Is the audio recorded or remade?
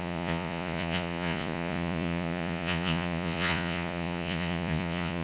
remade